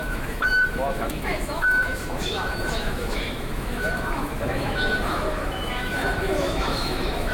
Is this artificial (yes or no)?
yes